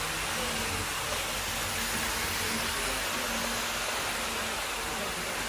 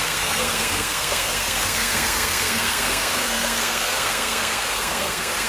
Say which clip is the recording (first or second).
first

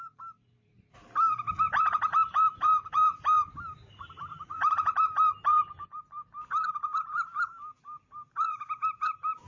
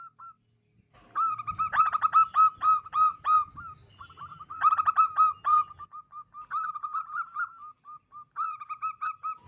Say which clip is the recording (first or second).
second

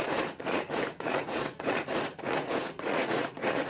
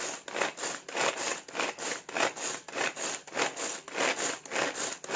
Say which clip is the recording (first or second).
second